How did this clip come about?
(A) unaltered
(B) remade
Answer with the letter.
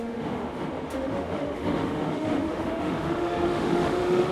B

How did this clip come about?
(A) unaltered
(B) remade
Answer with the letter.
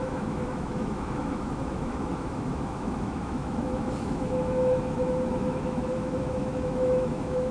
B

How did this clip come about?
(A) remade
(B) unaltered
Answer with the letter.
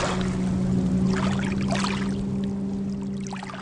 B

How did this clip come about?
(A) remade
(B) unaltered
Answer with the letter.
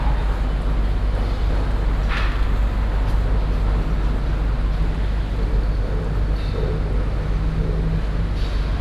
B